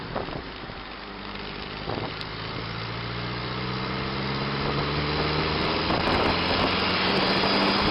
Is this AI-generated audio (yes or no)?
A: no